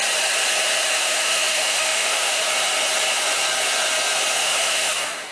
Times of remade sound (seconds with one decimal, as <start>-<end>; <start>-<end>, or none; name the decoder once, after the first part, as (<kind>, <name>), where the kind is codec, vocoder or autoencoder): 1.0-2.4 (autoencoder, DAC-VAE); 4.4-5.3